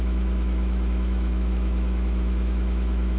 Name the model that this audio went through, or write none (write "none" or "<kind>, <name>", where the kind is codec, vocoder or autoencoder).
autoencoder, DAC-VAE